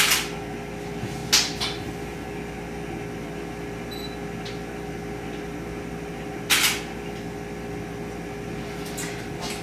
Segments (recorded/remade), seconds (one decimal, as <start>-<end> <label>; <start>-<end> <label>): 0.0-9.6 recorded